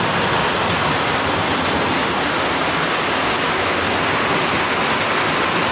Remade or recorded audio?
recorded